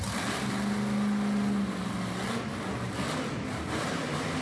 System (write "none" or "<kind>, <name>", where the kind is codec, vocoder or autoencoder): none